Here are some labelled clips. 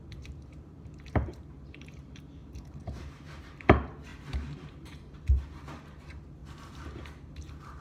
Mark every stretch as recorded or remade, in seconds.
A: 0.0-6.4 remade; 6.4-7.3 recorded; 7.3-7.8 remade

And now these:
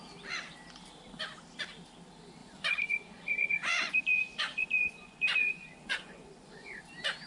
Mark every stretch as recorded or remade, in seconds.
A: 0.0-2.4 recorded; 2.4-6.8 remade; 6.8-7.3 recorded

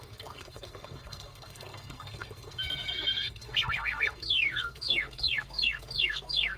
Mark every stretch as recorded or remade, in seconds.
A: 0.0-6.6 remade

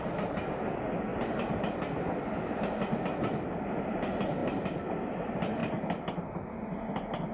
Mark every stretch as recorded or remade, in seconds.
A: 0.0-7.3 recorded

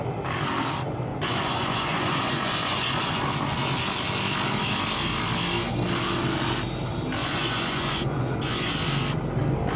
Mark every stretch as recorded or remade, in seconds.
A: 0.0-1.1 recorded; 1.1-3.2 remade; 3.2-7.2 recorded; 7.2-8.7 remade; 8.7-9.8 recorded